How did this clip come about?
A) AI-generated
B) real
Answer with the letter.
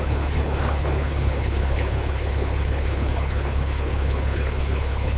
A